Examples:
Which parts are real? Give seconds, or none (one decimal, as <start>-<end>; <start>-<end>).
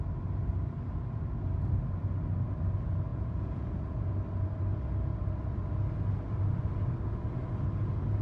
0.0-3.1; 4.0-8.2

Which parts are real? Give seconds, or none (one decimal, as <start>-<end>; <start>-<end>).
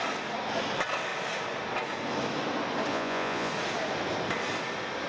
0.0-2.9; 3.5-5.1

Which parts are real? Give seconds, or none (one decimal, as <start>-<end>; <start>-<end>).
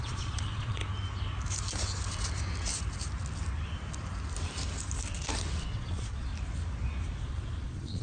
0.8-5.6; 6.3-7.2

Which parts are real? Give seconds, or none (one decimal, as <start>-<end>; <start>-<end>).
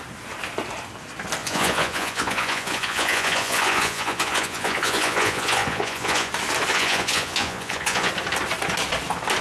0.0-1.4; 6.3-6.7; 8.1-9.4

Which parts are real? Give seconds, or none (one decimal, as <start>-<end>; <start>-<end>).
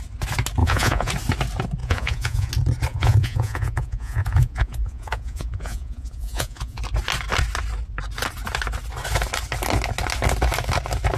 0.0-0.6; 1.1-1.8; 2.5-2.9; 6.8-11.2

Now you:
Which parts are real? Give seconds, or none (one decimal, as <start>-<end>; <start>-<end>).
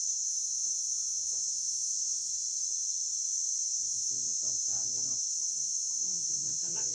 2.3-3.7; 5.3-6.0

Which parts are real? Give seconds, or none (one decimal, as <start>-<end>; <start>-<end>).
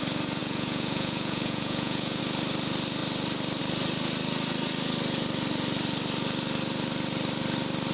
0.0-0.4; 2.2-7.9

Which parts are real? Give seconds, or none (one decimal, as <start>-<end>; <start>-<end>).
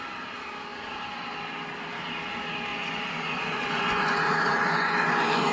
0.0-2.7